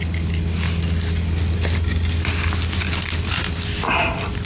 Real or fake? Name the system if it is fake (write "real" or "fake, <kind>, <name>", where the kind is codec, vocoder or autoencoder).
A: real